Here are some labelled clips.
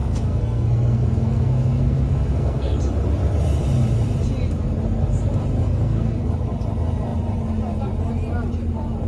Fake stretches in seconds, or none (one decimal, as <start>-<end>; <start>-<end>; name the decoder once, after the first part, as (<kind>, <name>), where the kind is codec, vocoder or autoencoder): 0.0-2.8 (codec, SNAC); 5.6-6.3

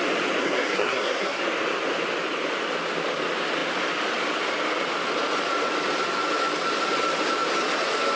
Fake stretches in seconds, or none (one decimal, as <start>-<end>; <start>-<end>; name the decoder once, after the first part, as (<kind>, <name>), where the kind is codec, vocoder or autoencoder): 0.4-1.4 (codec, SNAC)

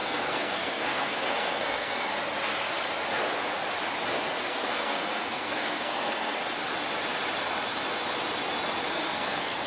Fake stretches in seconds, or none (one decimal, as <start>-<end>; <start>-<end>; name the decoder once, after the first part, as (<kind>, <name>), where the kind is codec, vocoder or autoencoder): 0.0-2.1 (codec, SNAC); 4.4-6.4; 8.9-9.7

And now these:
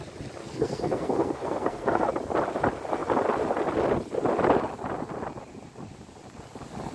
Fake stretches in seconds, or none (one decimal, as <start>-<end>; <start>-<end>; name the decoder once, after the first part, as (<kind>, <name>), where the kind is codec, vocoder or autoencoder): 0.4-2.1 (codec, SNAC)

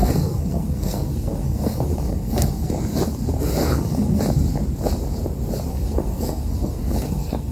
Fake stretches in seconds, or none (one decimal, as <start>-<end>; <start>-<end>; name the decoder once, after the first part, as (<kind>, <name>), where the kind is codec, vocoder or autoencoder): 0.0-2.7 (codec, SNAC); 3.6-4.2; 5.7-7.5

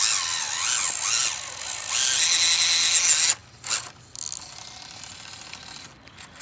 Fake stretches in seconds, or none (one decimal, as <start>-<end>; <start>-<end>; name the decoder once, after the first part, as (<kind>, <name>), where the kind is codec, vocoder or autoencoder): none

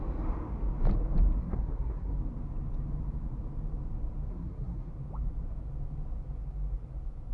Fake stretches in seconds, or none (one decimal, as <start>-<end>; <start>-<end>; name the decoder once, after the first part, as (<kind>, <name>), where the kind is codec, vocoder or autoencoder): 1.4-2.1 (codec, SNAC); 4.3-4.9